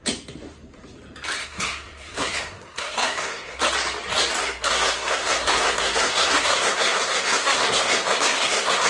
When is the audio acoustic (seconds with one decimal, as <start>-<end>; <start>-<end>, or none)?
0.0-1.4; 3.6-4.4